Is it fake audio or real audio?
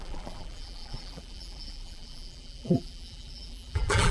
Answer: fake